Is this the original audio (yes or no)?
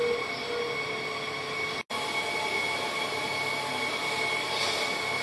yes